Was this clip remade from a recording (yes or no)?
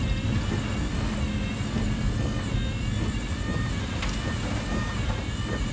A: no